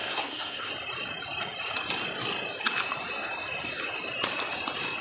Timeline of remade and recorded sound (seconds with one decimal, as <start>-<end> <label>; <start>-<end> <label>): 0.0-0.7 remade; 0.7-5.0 recorded